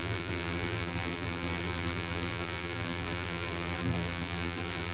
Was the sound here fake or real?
fake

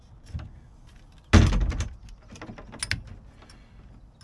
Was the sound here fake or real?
real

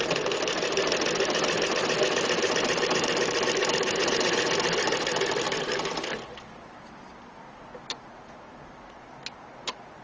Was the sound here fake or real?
fake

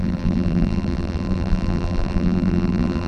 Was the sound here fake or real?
fake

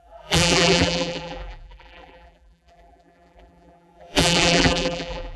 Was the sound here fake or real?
fake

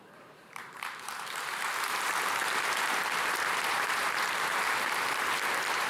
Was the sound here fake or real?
fake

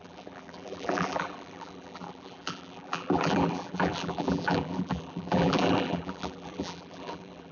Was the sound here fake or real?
fake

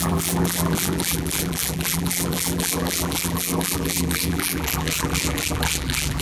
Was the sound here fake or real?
fake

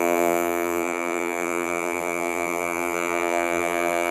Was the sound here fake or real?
fake